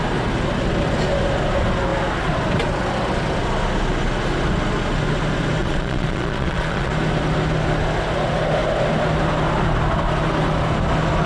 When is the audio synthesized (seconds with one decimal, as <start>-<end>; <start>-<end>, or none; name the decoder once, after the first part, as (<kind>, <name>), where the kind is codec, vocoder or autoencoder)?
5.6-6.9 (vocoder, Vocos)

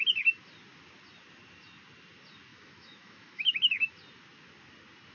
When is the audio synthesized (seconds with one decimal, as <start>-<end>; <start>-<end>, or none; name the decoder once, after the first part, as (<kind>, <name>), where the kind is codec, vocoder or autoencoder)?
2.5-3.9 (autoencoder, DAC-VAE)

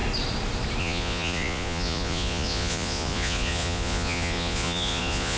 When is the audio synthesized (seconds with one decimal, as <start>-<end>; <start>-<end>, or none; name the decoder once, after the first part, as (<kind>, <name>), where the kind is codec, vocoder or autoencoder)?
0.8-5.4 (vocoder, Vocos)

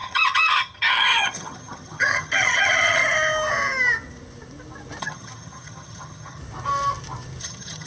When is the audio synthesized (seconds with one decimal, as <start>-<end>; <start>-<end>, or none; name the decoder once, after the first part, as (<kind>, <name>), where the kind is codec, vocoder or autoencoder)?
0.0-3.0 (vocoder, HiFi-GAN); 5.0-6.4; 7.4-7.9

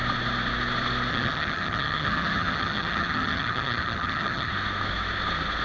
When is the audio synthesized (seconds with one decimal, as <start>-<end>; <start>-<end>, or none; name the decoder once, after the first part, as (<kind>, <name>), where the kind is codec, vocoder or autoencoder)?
1.1-4.5 (vocoder, HiFi-GAN)

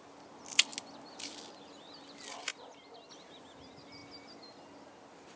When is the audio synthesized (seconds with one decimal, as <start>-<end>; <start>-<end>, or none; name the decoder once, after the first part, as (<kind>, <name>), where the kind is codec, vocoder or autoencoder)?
none

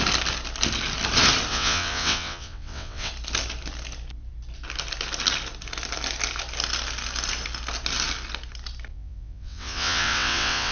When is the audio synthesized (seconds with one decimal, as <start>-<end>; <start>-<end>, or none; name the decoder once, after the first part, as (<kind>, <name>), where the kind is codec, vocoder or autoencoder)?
1.5-3.1 (vocoder, WaveNeXt); 8.9-10.7